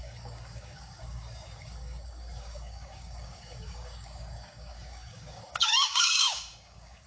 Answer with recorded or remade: remade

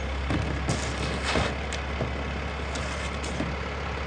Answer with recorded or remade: recorded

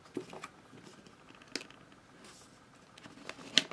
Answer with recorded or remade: recorded